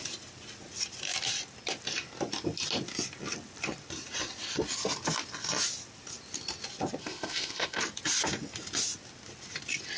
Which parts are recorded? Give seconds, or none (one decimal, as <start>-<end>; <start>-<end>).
0.0-7.0; 7.8-10.0